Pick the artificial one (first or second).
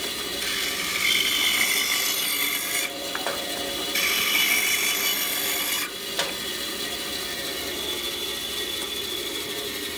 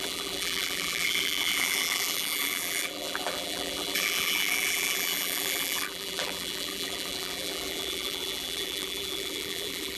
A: second